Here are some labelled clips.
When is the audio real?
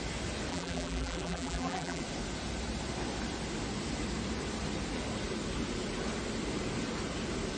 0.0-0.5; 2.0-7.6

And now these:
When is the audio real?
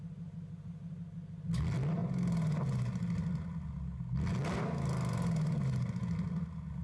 0.0-6.8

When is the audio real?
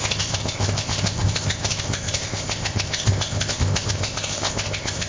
none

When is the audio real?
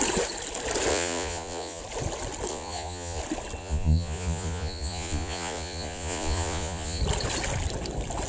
0.0-0.9; 1.8-2.5; 3.2-3.6; 7.0-8.3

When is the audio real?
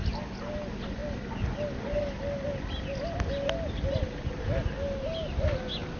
0.0-6.0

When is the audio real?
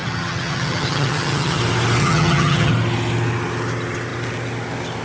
1.6-2.0; 2.7-5.0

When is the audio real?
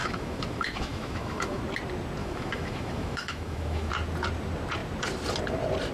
1.6-2.2; 3.9-5.9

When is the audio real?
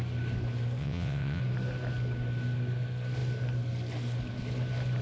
0.0-0.8; 1.4-5.0